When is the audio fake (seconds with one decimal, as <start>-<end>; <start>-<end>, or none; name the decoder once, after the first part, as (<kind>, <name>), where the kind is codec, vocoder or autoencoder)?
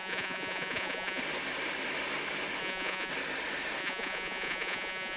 0.0-1.2 (vocoder, Vocos); 2.6-3.1; 3.8-5.2